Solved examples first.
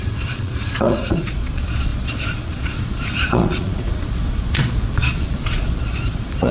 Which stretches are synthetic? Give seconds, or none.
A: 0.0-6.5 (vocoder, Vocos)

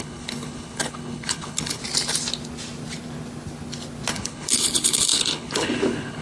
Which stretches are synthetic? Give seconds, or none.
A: 0.0-1.8 (codec, HILCodec); 4.1-6.2